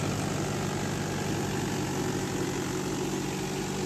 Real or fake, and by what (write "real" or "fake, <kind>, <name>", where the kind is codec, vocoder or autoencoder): real